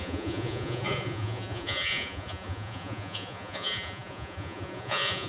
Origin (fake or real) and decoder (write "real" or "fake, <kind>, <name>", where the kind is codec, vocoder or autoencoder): fake, vocoder, Vocos